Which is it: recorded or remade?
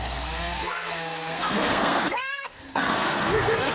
remade